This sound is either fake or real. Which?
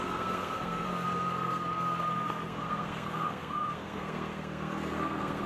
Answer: fake